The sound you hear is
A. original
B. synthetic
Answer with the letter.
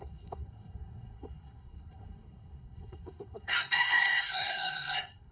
B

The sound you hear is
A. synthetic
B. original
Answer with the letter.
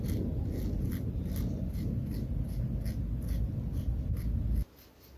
B